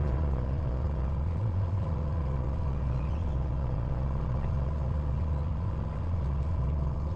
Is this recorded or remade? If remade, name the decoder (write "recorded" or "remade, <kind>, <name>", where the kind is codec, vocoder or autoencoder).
remade, vocoder, Vocos